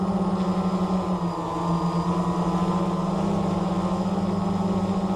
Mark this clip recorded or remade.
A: recorded